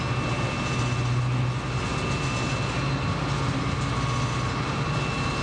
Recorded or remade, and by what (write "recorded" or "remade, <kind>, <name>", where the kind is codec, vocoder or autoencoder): recorded